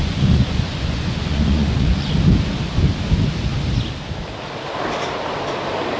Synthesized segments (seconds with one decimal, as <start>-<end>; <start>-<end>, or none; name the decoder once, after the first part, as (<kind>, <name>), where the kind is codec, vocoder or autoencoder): 0.0-2.1 (vocoder, Vocos)